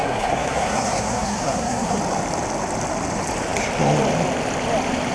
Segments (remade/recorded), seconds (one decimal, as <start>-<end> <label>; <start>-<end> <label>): 0.0-2.0 remade; 2.0-5.1 recorded